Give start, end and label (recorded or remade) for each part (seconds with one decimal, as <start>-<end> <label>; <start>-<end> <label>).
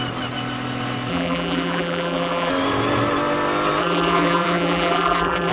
0.0-1.1 recorded; 1.1-2.5 remade; 2.5-3.8 recorded; 3.8-5.5 remade